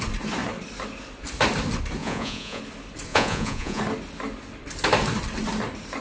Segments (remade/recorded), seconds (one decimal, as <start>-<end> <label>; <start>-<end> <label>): 0.0-2.0 recorded; 2.0-2.6 remade; 2.6-3.1 recorded; 3.1-3.8 remade; 3.8-6.0 recorded

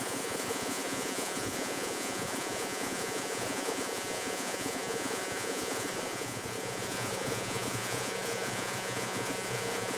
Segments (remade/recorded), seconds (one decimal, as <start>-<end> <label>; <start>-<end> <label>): 0.0-10.0 remade

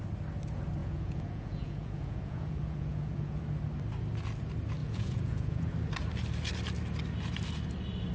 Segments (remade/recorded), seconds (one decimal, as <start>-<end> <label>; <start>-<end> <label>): 0.0-0.8 recorded; 0.8-3.4 remade; 3.4-4.8 recorded; 4.8-5.7 remade; 5.7-8.1 recorded

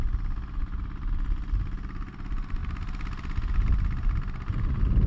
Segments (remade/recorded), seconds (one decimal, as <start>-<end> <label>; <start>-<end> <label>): 0.0-5.1 recorded

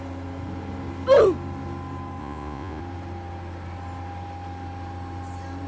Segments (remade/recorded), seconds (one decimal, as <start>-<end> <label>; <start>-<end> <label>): 0.0-2.2 recorded; 2.2-2.8 remade; 2.8-5.7 recorded

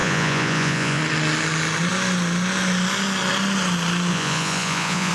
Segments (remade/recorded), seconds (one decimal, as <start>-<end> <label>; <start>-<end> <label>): 0.0-1.0 remade; 1.0-4.1 recorded; 4.1-5.1 remade